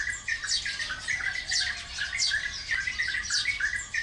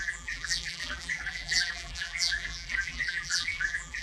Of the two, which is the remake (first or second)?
second